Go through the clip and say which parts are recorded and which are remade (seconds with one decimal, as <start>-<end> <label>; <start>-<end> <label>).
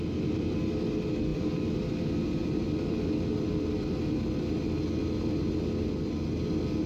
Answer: 0.0-6.9 recorded